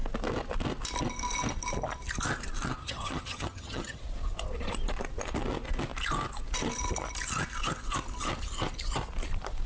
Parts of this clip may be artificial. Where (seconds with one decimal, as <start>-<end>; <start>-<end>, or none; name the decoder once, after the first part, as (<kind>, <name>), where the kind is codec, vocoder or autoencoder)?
2.8-4.0 (vocoder, HiFi-GAN)

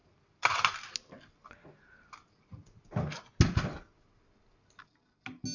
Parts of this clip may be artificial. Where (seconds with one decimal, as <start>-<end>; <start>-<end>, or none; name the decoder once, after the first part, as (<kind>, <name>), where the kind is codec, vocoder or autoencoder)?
none

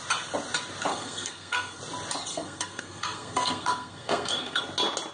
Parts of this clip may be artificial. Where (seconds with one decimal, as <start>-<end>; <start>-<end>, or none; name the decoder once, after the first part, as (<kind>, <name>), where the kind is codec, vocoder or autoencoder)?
0.9-1.8 (codec, SNAC); 2.3-4.6

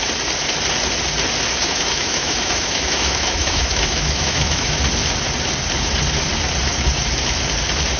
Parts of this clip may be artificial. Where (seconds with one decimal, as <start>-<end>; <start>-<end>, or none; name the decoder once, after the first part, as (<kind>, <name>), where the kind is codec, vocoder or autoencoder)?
1.6-4.8 (autoencoder, DAC-VAE)